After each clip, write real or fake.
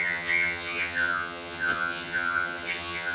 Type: fake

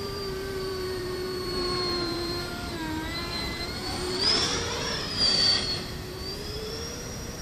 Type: fake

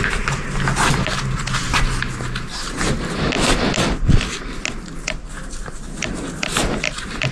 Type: real